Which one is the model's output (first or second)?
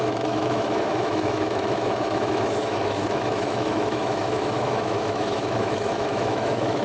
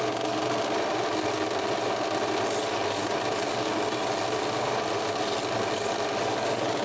first